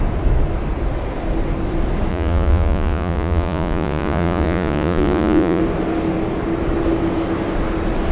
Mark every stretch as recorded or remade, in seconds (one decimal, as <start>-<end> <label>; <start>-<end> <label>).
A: 0.0-2.1 recorded; 2.1-5.6 remade; 5.6-8.1 recorded